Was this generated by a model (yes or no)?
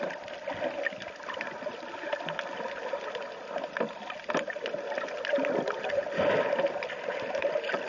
no